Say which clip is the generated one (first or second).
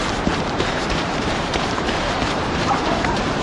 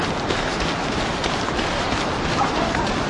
first